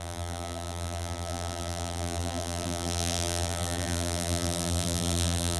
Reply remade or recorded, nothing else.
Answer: remade